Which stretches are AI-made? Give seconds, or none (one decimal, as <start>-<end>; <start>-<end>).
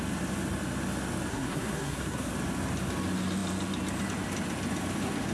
1.3-2.3